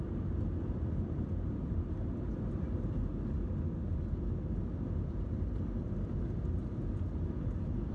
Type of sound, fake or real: real